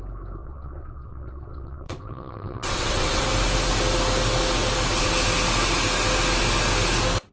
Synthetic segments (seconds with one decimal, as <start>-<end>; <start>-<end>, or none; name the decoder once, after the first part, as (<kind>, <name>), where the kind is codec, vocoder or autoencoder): 0.4-3.3 (vocoder, WaveNeXt)